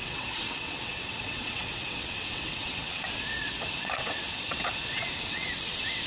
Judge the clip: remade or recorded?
remade